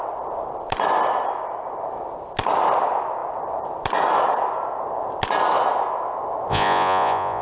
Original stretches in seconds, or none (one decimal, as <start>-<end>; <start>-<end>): 0.0-6.5